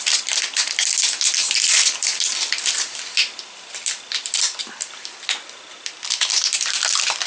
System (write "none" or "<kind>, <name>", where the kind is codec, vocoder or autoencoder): none